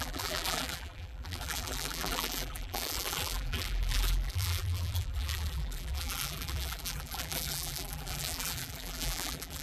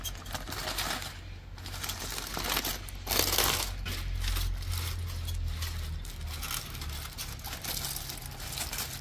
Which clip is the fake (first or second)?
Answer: first